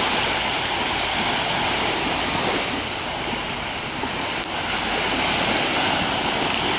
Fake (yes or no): no